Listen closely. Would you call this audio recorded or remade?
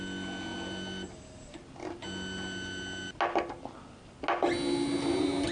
recorded